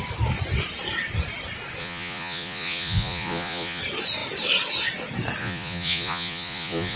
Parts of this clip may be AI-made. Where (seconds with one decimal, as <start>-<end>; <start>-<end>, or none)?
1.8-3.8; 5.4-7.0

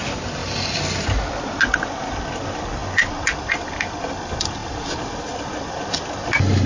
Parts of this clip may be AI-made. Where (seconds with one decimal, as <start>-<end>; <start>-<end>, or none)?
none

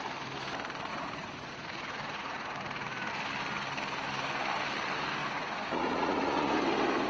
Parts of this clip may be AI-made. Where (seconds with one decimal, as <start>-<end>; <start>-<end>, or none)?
0.9-3.1; 5.2-6.6